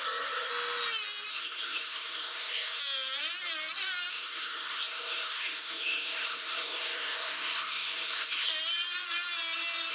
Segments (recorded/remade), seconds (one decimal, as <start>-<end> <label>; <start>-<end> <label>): 0.0-0.5 remade; 0.5-1.3 recorded; 1.3-2.8 remade; 2.8-4.1 recorded; 4.1-8.5 remade; 8.5-9.9 recorded